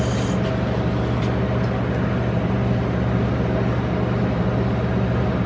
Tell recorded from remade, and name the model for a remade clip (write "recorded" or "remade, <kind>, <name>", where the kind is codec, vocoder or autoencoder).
recorded